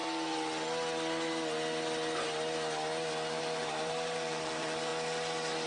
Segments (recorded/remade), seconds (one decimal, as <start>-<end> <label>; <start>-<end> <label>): 0.0-3.3 recorded; 3.3-4.9 remade; 4.9-5.7 recorded